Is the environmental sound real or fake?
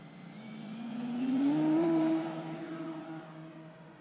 fake